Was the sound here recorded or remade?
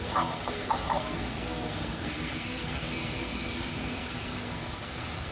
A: remade